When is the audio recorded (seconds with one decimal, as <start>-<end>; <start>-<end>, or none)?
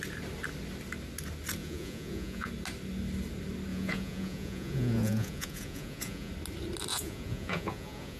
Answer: 0.0-1.6; 2.5-3.7; 6.3-6.9